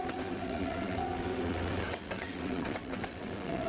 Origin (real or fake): fake